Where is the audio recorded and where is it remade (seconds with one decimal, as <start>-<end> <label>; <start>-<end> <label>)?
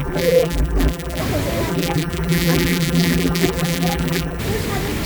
0.0-1.2 remade; 1.2-1.7 recorded; 1.7-4.4 remade; 4.4-5.1 recorded